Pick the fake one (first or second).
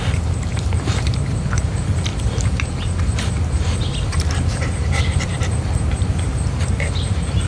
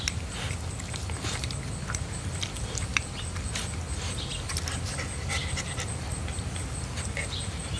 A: first